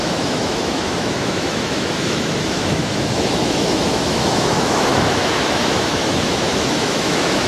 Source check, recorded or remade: remade